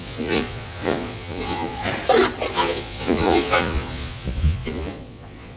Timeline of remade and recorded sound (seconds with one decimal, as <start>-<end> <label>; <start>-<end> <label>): 0.0-1.9 remade; 1.9-2.5 recorded; 2.5-5.6 remade